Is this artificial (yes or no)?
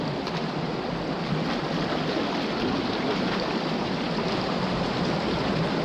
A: no